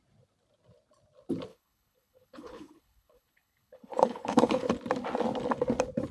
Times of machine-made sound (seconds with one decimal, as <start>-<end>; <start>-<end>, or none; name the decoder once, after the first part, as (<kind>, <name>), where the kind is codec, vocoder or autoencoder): 1.5-4.7 (codec, HILCodec)